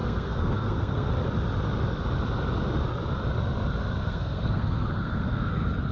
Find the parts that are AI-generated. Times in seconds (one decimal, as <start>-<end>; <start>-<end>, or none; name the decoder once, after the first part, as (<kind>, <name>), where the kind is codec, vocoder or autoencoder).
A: 0.0-1.1 (codec, SNAC); 4.0-5.5